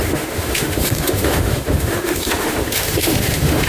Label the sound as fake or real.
fake